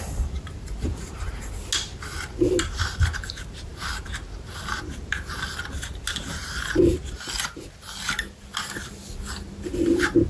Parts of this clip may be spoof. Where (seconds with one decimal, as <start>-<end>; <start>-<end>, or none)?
none